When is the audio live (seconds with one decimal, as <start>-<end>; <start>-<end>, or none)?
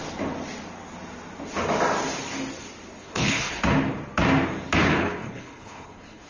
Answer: 0.0-3.0; 3.6-4.8